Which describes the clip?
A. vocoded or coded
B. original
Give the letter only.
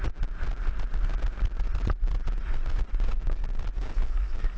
B